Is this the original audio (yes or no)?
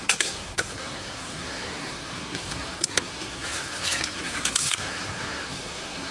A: no